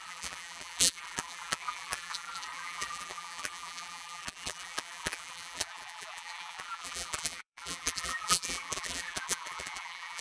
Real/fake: fake